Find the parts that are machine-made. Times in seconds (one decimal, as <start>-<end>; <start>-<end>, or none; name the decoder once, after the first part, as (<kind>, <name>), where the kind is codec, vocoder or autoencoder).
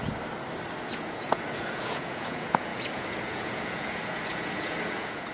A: 0.9-5.3 (vocoder, Vocos)